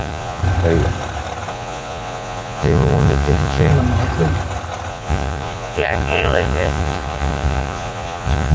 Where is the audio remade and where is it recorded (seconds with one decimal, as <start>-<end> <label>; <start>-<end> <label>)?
0.0-0.4 remade; 0.4-1.5 recorded; 1.5-3.7 remade; 3.7-4.9 recorded; 4.9-8.5 remade